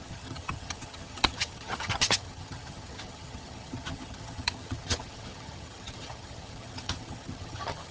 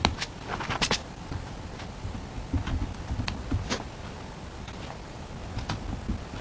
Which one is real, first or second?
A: second